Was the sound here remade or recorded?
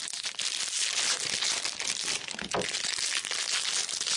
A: recorded